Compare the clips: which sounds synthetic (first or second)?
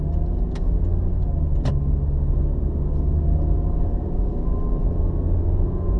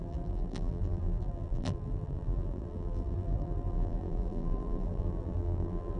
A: second